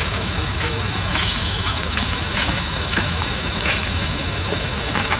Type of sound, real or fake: fake